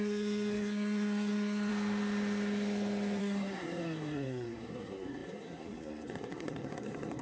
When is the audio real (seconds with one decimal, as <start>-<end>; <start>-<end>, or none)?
1.7-3.2